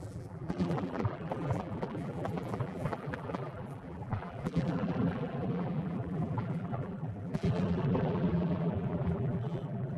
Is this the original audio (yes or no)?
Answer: no